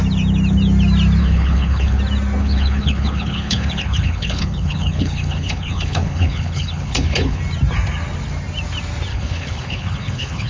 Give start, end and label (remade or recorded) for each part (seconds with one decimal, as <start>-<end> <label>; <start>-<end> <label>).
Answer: 0.0-1.2 recorded; 1.2-2.0 remade; 2.0-2.4 recorded; 2.4-7.4 remade; 7.4-9.1 recorded; 9.1-10.5 remade